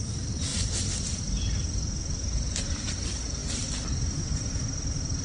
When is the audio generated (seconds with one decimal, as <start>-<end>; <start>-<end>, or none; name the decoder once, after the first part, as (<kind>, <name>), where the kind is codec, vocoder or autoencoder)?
none